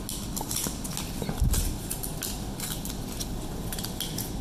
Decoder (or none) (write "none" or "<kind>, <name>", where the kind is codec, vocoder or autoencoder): none